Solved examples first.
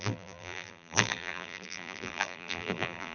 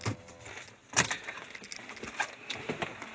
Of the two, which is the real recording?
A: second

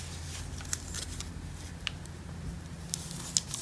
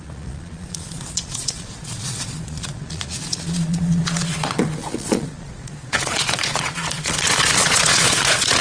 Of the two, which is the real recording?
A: first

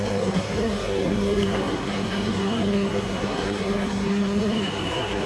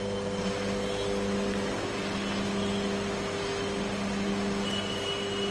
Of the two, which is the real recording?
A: second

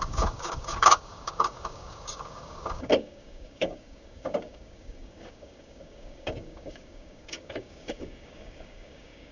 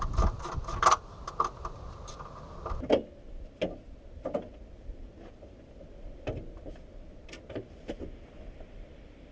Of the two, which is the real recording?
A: second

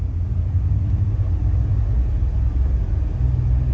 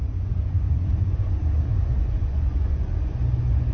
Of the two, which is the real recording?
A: first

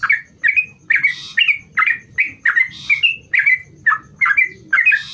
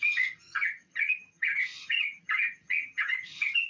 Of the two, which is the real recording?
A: first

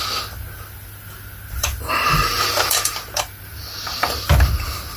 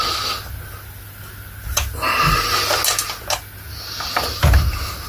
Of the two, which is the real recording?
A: second